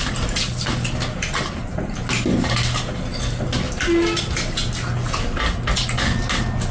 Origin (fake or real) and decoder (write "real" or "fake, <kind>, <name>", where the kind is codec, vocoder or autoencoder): real